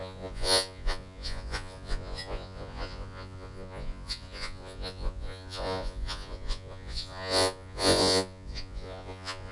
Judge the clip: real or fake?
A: fake